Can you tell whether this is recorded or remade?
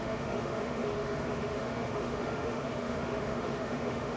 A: remade